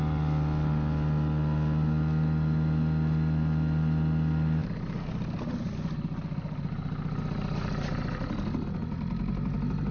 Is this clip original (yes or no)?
yes